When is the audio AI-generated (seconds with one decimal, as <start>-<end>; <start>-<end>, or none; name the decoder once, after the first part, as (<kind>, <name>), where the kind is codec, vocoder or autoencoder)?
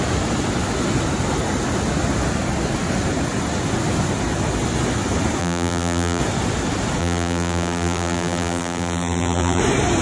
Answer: 5.4-6.2 (vocoder, BigVGAN v2); 7.0-9.6